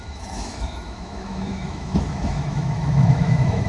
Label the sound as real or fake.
fake